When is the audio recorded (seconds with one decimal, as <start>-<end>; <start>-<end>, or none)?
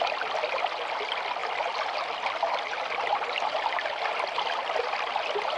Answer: 0.0-5.6